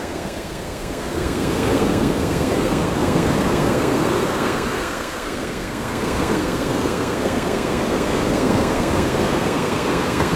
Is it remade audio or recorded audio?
remade